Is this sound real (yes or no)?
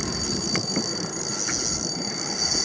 yes